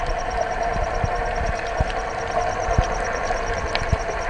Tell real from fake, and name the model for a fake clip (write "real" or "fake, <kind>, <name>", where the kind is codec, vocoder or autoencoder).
real